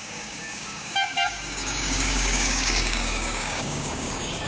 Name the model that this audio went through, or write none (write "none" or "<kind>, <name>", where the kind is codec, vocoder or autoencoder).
codec, DAC